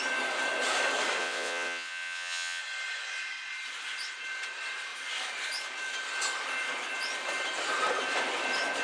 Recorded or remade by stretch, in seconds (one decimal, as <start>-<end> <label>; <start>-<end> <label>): 0.0-1.2 recorded; 1.2-2.6 remade; 2.6-8.8 recorded